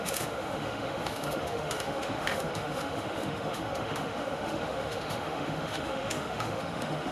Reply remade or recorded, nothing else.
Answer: remade